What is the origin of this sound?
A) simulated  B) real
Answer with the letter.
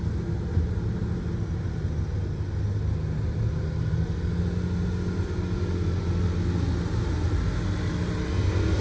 B